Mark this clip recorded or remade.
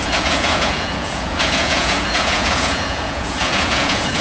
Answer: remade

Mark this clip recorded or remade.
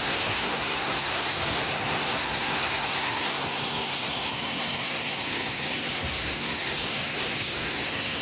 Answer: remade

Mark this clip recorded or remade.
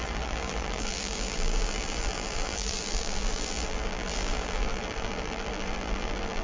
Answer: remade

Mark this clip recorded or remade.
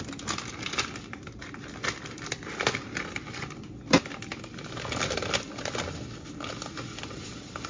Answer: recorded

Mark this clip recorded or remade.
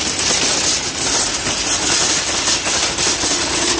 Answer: recorded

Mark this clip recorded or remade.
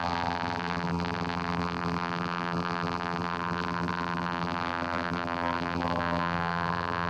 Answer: remade